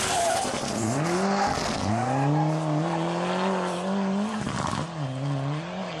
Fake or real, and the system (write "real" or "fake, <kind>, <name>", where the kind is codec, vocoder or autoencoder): real